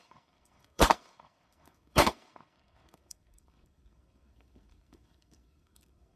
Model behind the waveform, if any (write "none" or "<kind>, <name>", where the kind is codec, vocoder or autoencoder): codec, SNAC